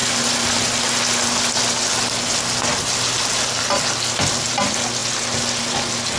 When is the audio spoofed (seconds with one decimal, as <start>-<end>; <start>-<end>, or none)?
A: none